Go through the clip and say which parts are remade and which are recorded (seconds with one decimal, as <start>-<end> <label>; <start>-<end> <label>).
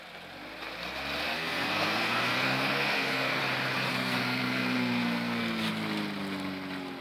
0.0-1.3 recorded; 1.3-3.4 remade; 3.4-3.9 recorded; 3.9-5.7 remade; 5.7-7.0 recorded